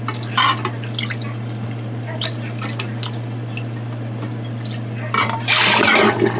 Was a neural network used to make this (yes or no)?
no